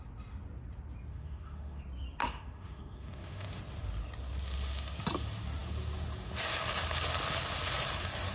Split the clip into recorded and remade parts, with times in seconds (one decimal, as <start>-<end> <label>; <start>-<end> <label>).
0.0-1.1 recorded; 1.1-1.8 remade; 1.8-2.2 recorded; 2.2-3.6 remade; 3.6-8.3 recorded

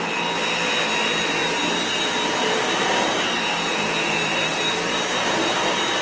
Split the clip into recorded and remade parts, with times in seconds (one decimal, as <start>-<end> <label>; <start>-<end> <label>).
0.0-1.4 recorded; 1.4-5.0 remade; 5.0-6.0 recorded

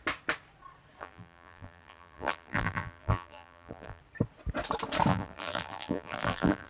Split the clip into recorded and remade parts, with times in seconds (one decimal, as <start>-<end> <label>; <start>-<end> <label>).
0.0-1.0 recorded; 1.0-4.0 remade; 4.0-5.1 recorded; 5.1-6.7 remade